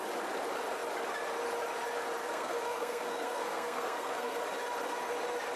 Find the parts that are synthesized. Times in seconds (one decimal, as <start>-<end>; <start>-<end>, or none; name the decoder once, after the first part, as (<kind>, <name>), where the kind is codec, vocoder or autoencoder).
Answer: 2.2-4.4 (codec, SNAC)